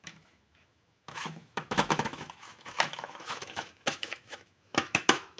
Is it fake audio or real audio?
fake